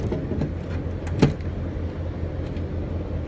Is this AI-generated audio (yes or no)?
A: no